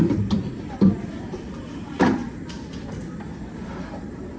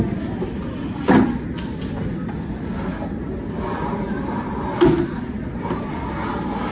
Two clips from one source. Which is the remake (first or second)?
first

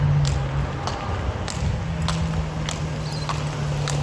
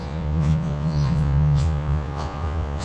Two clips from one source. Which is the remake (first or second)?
second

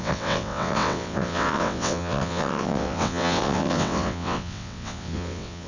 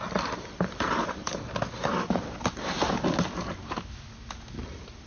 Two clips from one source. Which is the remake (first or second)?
first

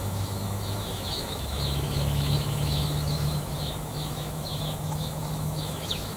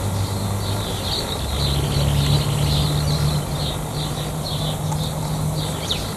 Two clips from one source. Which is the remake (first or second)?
first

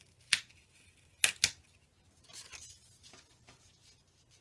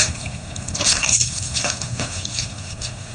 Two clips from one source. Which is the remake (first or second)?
second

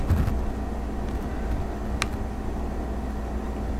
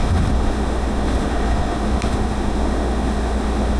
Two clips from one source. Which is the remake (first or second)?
second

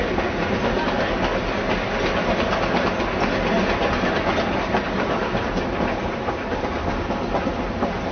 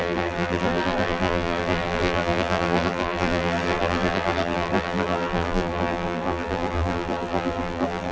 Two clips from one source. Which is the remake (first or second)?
second